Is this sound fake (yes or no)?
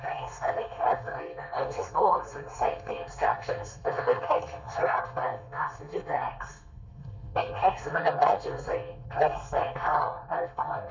yes